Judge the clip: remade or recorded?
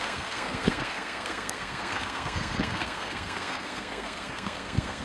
remade